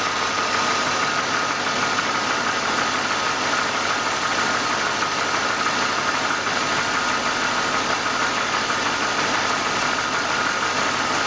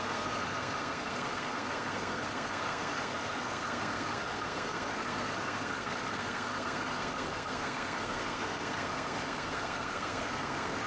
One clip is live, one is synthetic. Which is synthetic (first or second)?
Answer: second